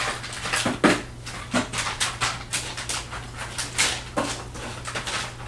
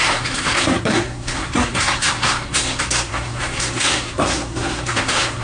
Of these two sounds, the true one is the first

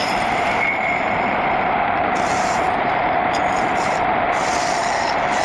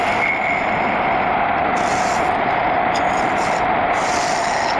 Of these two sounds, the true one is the second